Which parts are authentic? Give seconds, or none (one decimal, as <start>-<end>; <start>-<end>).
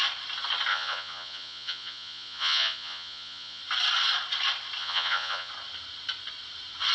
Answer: 0.0-0.7; 3.6-4.8; 5.5-6.9